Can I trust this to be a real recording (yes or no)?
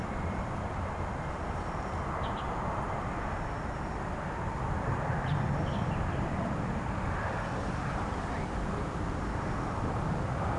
no